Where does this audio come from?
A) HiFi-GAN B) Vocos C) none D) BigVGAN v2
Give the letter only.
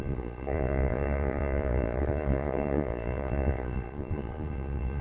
B